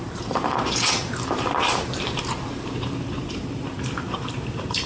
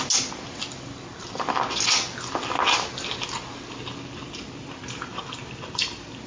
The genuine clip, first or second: second